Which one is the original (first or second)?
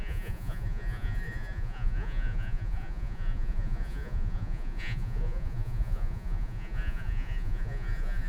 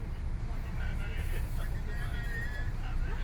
second